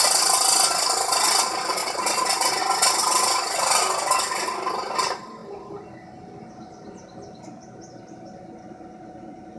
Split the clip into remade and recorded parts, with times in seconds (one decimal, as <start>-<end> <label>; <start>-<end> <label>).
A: 0.0-1.8 recorded; 1.8-2.6 remade; 2.6-3.0 recorded; 3.0-3.8 remade; 3.8-9.6 recorded